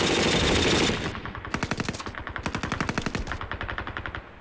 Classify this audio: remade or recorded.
recorded